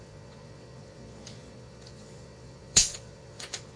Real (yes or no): no